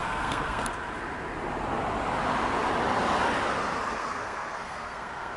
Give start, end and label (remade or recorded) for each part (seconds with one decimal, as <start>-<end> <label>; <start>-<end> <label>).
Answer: 0.0-0.6 remade; 0.6-4.0 recorded; 4.0-5.4 remade